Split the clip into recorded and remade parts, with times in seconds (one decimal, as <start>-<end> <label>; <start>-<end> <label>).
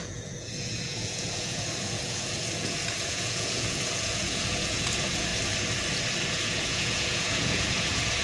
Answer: 0.0-5.3 remade; 5.3-6.3 recorded; 6.3-8.2 remade